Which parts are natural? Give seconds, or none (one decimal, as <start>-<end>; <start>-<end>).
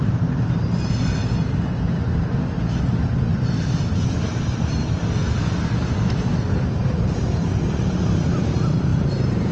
0.0-8.9